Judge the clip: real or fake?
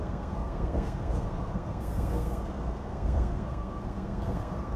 fake